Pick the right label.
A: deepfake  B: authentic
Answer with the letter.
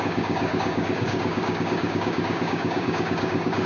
A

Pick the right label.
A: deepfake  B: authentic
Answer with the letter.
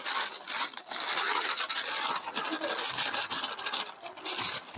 B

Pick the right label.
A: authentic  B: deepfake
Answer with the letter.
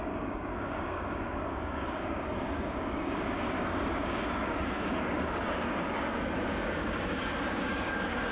B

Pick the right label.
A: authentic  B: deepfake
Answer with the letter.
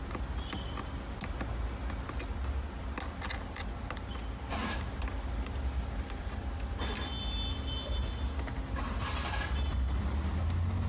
A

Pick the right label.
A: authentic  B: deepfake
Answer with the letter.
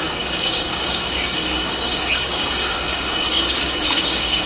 B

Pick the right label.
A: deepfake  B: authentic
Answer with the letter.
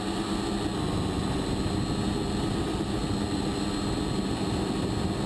B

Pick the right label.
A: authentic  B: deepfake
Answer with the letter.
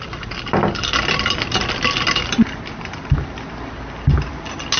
A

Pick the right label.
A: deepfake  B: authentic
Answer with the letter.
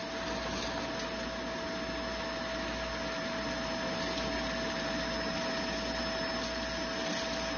B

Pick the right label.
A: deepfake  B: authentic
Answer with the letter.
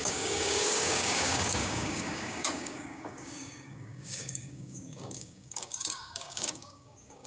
A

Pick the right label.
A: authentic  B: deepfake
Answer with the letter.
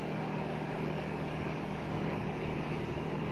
B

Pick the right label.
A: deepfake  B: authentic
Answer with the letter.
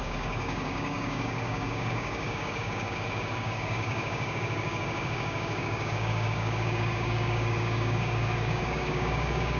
A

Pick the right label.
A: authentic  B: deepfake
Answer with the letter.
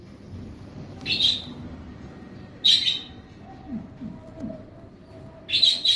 A